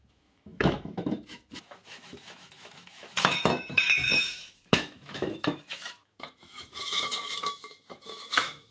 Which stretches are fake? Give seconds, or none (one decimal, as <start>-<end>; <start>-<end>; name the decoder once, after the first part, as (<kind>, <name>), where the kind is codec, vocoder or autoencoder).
0.0-8.7 (autoencoder, DAC-VAE)